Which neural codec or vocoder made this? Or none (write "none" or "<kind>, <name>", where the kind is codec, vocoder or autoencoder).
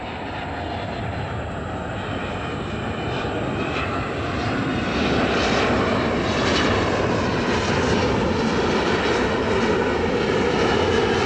none